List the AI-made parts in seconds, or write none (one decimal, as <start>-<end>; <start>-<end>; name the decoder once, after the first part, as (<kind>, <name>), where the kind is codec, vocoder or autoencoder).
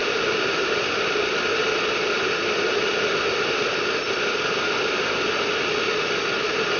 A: none